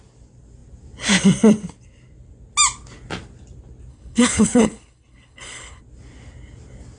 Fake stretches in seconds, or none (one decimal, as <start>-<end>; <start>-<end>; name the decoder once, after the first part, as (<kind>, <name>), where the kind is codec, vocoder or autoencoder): 3.9-5.8 (codec, HILCodec)